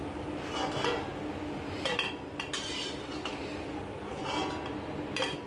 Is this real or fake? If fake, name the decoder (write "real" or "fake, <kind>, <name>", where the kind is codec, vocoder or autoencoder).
real